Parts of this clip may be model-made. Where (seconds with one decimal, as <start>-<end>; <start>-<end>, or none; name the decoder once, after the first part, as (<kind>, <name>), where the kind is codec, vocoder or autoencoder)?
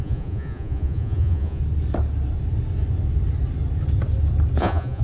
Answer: 0.0-1.6 (vocoder, Vocos); 4.6-5.0